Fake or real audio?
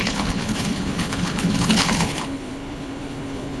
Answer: fake